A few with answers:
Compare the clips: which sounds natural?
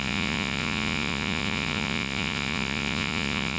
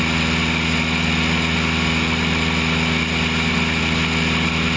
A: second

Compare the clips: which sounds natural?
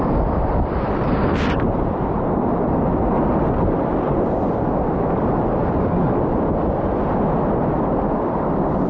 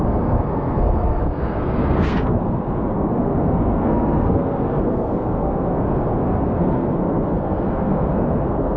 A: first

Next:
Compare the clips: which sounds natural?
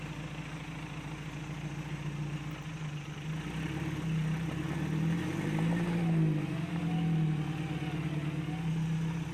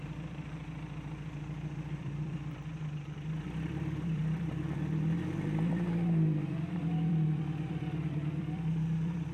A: first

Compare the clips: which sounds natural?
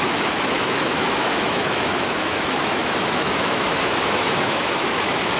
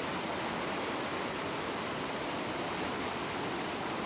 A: second